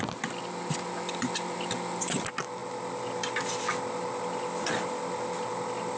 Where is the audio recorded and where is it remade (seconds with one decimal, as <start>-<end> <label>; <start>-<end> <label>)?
0.0-6.0 recorded